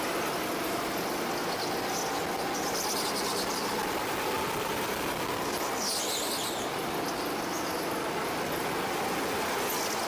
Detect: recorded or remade recorded